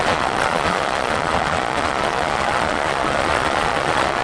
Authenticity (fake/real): fake